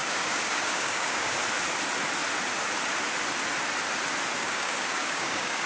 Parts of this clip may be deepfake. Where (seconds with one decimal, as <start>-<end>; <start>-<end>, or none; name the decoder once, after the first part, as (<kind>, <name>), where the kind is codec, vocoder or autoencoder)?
0.0-1.4 (codec, DAC); 4.4-5.7